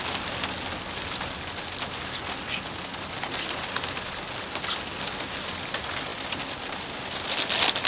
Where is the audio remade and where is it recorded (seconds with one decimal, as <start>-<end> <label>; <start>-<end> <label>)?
0.0-6.1 recorded; 6.1-7.3 remade; 7.3-7.9 recorded